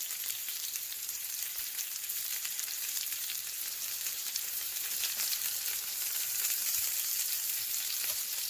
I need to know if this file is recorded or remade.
remade